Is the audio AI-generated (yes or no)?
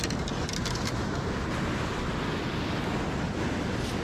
no